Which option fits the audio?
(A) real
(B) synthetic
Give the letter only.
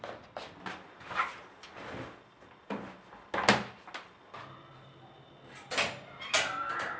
A